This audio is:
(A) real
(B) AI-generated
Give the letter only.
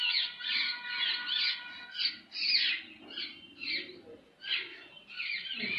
A